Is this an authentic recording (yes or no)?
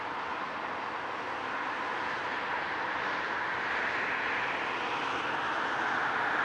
yes